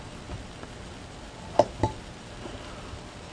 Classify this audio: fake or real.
real